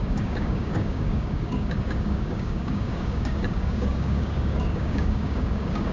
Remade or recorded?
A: remade